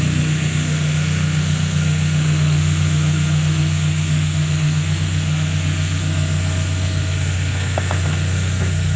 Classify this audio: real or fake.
fake